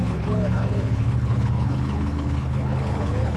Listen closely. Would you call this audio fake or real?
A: fake